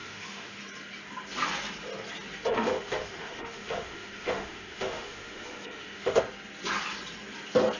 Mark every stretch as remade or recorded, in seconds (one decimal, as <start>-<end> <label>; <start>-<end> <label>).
0.0-0.6 remade; 0.6-2.5 recorded; 2.5-6.2 remade; 6.2-7.8 recorded